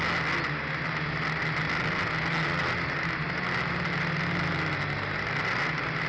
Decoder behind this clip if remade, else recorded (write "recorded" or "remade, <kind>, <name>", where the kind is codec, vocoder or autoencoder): recorded